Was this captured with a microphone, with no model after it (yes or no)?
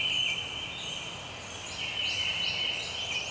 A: yes